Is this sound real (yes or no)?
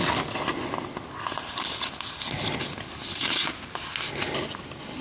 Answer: yes